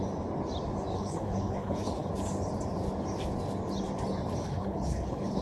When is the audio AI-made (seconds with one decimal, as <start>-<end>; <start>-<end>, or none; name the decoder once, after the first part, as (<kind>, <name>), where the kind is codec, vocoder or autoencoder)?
0.9-2.1 (codec, HILCodec); 4.4-5.4